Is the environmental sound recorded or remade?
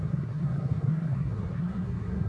remade